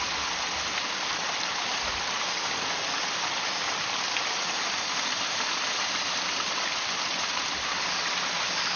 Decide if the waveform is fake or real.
real